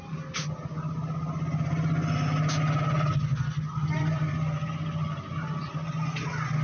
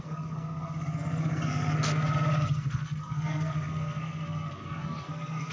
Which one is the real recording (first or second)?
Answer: first